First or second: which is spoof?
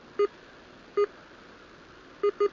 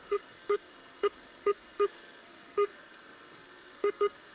second